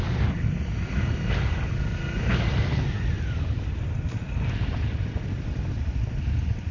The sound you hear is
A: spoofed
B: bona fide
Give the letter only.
B